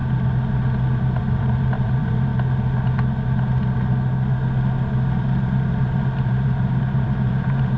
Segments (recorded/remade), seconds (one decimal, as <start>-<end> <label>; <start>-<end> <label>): 0.0-1.2 recorded; 1.2-2.3 remade; 2.3-5.2 recorded; 5.2-7.8 remade